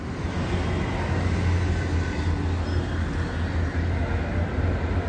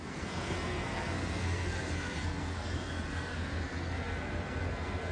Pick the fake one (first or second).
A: second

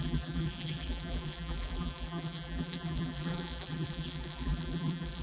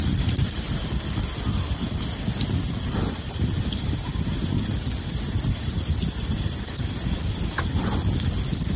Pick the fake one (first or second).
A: first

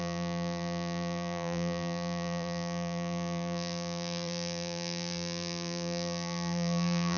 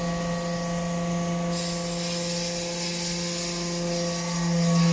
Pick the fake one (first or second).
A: first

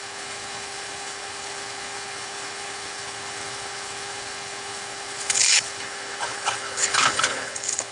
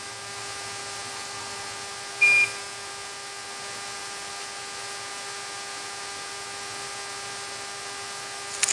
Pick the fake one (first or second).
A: first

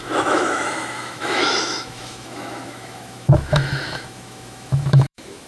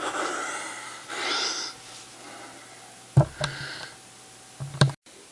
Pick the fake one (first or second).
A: first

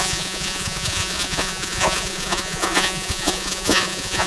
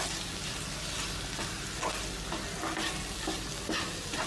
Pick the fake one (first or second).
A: first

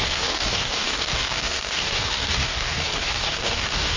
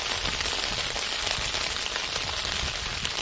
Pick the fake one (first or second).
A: first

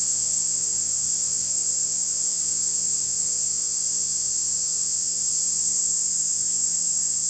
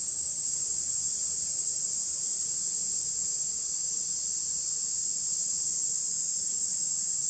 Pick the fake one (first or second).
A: first